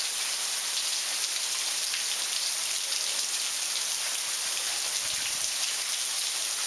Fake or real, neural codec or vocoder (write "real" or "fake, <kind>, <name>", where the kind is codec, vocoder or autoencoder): real